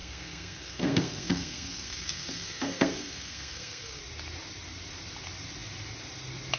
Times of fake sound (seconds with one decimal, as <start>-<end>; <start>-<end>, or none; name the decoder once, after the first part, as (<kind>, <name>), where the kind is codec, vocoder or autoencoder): 0.0-4.0 (codec, SNAC)